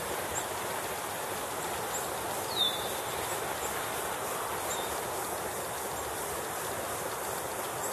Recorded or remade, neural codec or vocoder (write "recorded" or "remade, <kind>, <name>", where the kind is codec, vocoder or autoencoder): recorded